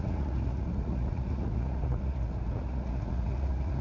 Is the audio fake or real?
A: fake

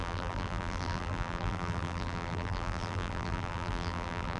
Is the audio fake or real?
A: fake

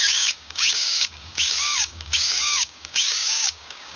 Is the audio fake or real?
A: fake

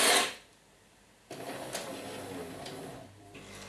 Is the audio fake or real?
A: real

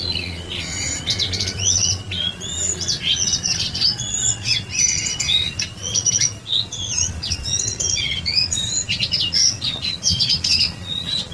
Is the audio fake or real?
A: fake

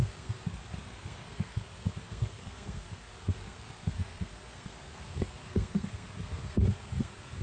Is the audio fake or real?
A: fake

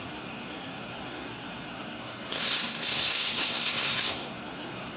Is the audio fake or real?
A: fake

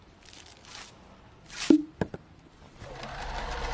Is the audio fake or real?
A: real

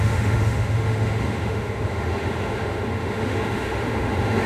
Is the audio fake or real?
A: fake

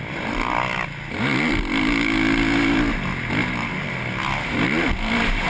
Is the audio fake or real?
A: real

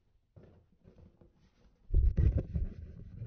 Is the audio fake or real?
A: real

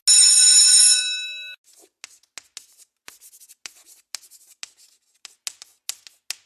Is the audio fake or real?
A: real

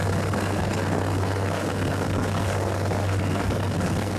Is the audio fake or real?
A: fake